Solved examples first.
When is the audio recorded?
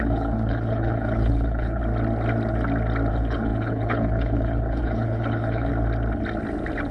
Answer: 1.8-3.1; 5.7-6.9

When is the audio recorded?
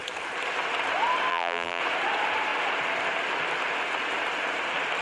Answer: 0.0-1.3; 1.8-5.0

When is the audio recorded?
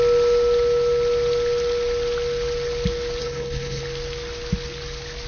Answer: 0.0-3.2; 3.8-5.3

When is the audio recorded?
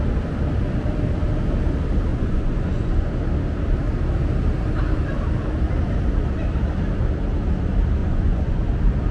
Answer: 0.0-2.1; 3.1-8.0; 8.6-9.1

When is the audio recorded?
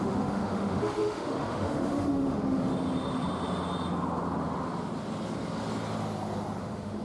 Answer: 2.7-6.6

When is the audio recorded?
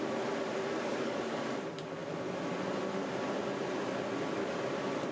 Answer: 0.0-0.9; 1.4-5.1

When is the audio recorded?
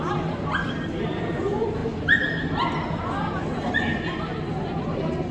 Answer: 0.0-5.3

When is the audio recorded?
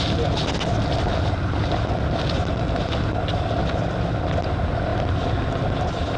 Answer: 0.0-6.2